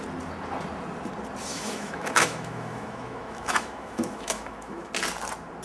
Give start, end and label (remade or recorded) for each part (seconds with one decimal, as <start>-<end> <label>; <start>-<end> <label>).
0.0-1.5 recorded; 1.5-4.9 remade; 4.9-5.6 recorded

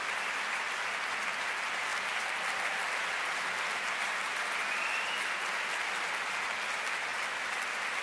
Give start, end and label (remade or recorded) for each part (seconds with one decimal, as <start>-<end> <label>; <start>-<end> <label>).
0.0-8.0 recorded

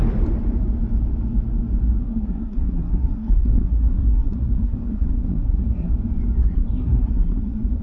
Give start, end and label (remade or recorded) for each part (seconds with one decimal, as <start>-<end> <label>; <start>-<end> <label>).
0.0-2.0 recorded; 2.0-5.9 remade; 5.9-6.4 recorded; 6.4-7.8 remade

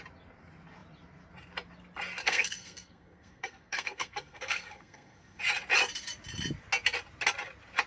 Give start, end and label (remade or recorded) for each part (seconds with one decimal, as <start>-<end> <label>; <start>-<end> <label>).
0.0-2.2 recorded; 2.2-5.4 remade; 5.4-7.9 recorded

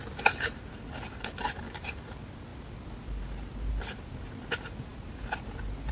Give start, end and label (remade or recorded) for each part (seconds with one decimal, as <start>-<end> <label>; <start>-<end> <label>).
0.0-5.9 recorded

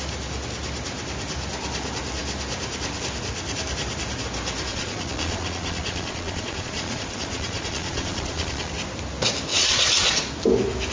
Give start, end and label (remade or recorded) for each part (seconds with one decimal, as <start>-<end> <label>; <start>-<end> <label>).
0.0-4.7 recorded; 4.7-8.7 remade; 8.7-9.5 recorded; 9.5-10.3 remade; 10.3-10.9 recorded

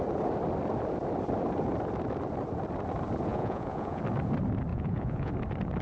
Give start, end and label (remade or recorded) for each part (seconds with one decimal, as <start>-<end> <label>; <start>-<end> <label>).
0.0-3.3 recorded; 3.3-4.0 remade; 4.0-4.7 recorded; 4.7-5.3 remade; 5.3-5.8 recorded

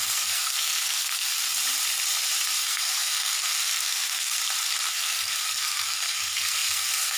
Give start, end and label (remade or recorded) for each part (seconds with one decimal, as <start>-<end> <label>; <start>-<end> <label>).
0.0-1.3 remade; 1.3-2.6 recorded; 2.6-4.4 remade; 4.4-4.9 recorded; 4.9-7.2 remade